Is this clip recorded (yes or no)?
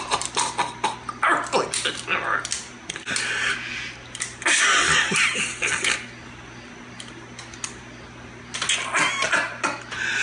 yes